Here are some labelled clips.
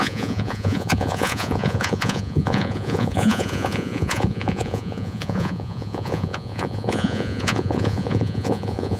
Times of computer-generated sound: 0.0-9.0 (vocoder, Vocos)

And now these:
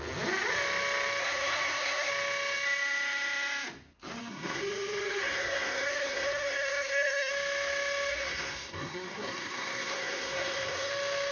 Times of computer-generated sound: 1.2-2.1 (codec, SNAC); 4.2-7.3; 8.1-10.9

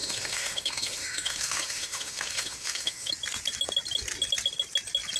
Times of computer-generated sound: 0.0-3.1 (autoencoder, DAC-VAE)